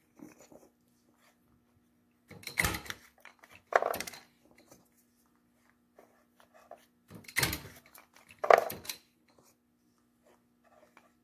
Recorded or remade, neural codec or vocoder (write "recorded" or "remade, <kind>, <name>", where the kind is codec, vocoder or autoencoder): remade, vocoder, BigVGAN v2